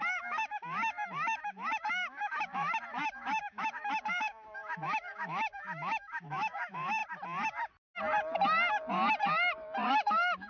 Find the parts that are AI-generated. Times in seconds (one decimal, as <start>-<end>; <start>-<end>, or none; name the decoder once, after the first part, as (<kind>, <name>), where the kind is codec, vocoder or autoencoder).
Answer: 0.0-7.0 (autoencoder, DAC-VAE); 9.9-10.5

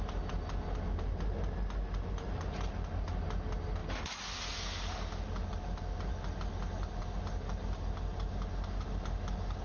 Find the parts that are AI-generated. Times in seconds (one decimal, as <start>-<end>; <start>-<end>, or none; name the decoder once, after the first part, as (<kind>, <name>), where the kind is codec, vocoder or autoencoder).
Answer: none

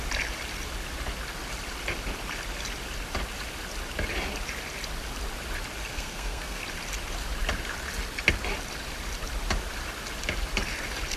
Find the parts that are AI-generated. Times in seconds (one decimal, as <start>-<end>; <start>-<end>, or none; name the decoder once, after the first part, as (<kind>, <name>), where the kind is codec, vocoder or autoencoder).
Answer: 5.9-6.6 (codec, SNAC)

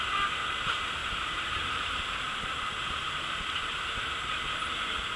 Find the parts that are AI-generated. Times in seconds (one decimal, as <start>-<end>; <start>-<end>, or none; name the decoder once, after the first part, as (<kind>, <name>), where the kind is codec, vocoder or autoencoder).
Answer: 1.0-4.1 (vocoder, BigVGAN v2)